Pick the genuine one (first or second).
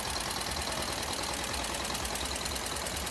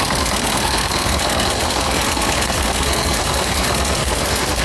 first